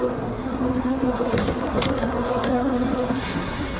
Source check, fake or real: fake